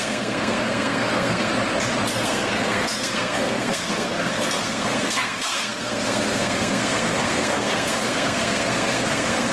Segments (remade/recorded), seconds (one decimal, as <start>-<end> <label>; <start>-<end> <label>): 0.0-1.5 remade; 1.5-2.1 recorded; 2.1-9.5 remade